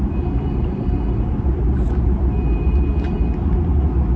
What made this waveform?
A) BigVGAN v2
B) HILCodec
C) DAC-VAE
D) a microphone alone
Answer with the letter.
D